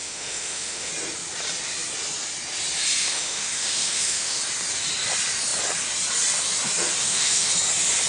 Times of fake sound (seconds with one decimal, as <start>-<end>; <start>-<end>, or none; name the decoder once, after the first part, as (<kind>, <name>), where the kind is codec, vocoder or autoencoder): 0.0-0.9 (autoencoder, DAC-VAE); 3.0-4.4; 7.0-7.5